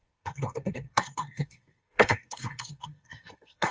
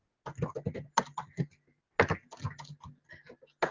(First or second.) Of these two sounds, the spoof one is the first